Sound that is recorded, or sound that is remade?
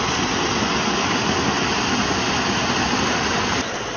recorded